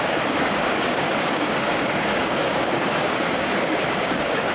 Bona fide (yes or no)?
no